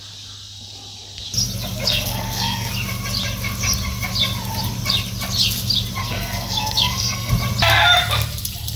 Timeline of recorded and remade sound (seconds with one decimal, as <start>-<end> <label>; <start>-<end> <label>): 0.0-1.9 recorded; 1.9-2.7 remade; 2.7-6.0 recorded; 6.0-7.3 remade; 7.3-8.8 recorded